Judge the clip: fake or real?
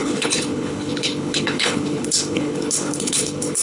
fake